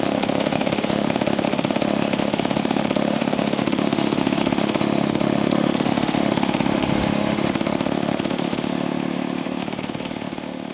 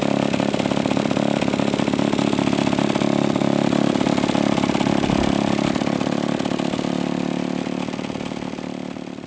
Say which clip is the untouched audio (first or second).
second